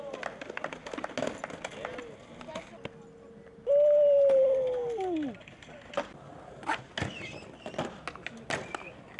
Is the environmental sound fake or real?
real